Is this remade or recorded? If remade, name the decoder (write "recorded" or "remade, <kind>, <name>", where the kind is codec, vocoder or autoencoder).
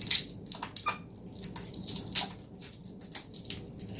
recorded